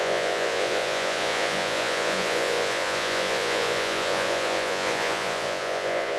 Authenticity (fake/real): fake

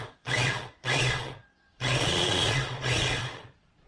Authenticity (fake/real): fake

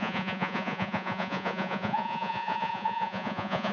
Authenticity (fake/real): fake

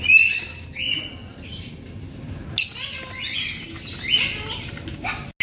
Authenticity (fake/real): real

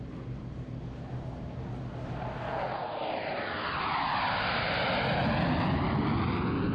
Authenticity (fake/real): real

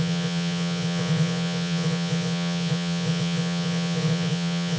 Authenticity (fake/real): fake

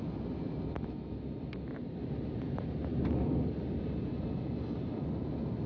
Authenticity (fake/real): real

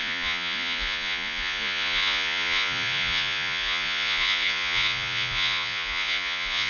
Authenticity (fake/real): fake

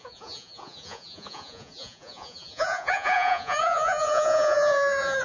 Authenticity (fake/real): fake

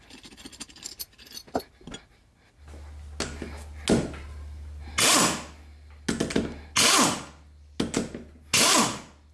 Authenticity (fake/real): real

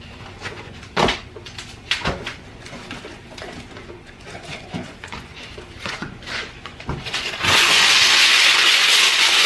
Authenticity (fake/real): fake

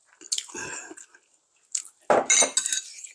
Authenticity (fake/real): real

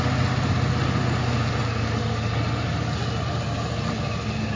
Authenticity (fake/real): real